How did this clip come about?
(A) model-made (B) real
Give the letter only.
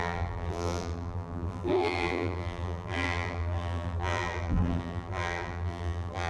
A